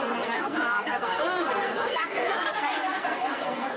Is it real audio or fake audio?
fake